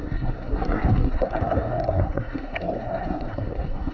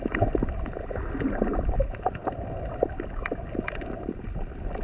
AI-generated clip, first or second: first